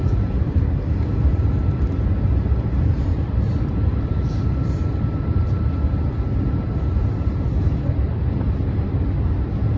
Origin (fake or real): fake